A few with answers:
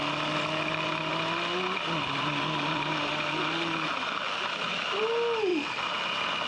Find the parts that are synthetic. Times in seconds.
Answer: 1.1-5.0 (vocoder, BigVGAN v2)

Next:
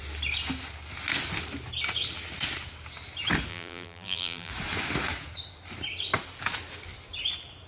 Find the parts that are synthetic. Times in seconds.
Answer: 3.5-4.5 (vocoder, BigVGAN v2)

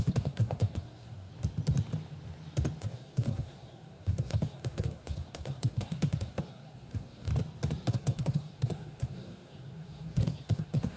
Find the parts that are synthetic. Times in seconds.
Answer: 0.0-1.3 (codec, SNAC); 2.8-7.3; 7.9-11.0

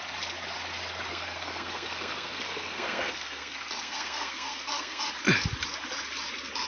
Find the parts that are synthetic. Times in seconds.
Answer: 1.1-5.1 (codec, SNAC)

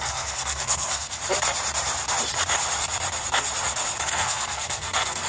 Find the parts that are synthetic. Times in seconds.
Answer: 0.0-1.2 (codec, SNAC); 4.0-5.3

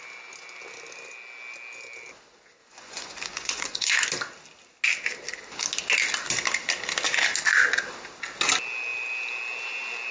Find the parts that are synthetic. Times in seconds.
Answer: 2.6-3.9 (vocoder, Vocos)

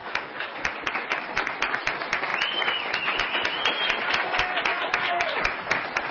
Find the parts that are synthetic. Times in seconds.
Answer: 0.0-0.7 (codec, DAC); 4.7-5.4